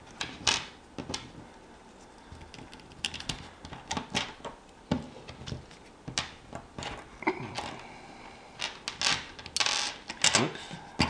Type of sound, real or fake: real